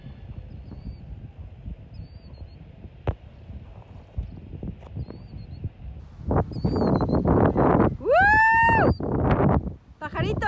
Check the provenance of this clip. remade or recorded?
recorded